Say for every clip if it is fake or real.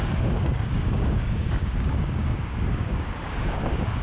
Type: fake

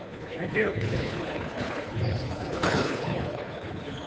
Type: fake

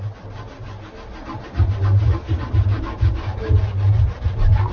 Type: real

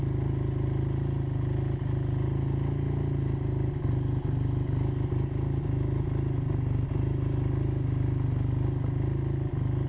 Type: real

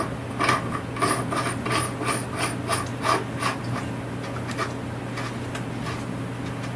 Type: real